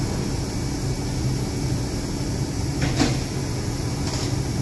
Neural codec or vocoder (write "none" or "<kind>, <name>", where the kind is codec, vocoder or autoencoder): none